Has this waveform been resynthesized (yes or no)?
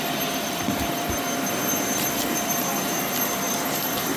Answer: yes